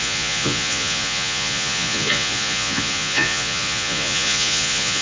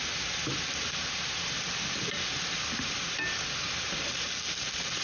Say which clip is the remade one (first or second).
first